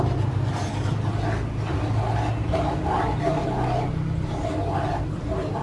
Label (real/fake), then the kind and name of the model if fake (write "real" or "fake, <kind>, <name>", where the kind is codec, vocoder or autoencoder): real